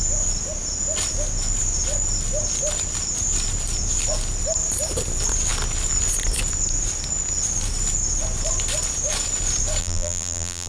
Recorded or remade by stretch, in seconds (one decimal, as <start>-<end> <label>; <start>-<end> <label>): 0.0-9.8 recorded; 9.8-10.7 remade